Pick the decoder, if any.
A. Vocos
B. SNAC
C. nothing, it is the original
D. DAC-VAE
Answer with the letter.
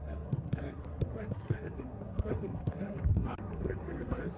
B